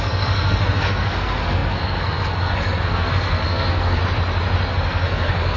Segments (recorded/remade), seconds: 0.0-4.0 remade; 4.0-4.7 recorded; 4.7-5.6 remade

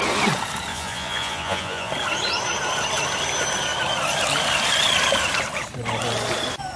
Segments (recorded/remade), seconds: 0.0-0.7 recorded; 0.7-1.9 remade; 1.9-6.8 recorded

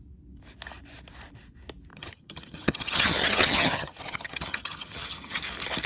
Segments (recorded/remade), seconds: 0.0-1.9 recorded; 1.9-5.4 remade; 5.4-5.9 recorded

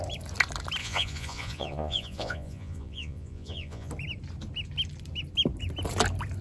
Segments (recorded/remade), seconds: 0.0-0.8 recorded; 0.8-3.9 remade; 3.9-6.4 recorded

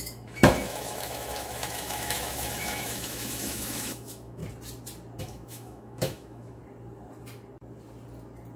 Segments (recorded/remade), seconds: 0.0-4.4 remade; 4.4-5.2 recorded; 5.2-6.6 remade; 6.6-8.6 recorded